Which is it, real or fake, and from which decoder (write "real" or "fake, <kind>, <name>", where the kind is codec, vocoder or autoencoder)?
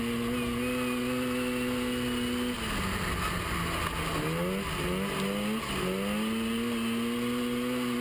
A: real